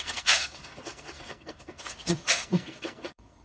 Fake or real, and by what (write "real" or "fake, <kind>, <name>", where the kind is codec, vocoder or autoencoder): fake, codec, SNAC